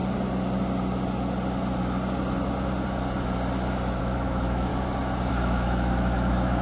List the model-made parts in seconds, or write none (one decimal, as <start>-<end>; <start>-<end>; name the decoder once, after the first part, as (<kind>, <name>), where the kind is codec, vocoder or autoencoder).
4.0-4.7 (autoencoder, DAC-VAE); 5.3-6.6